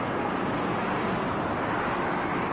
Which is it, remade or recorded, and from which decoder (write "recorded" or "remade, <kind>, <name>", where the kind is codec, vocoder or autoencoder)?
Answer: recorded